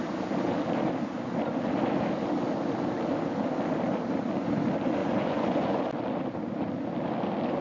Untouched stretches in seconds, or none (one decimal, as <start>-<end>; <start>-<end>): 0.0-5.0; 5.8-7.6